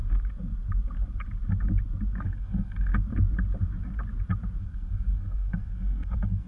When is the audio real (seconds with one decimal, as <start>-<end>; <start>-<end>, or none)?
0.0-2.2; 2.9-4.6